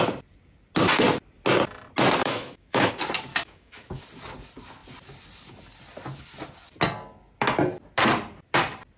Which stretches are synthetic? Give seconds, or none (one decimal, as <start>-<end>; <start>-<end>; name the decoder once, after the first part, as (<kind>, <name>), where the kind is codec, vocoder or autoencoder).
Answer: 2.2-2.9 (autoencoder, DAC-VAE); 3.3-4.0